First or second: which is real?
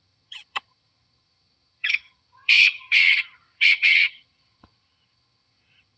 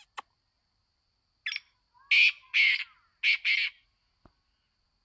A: second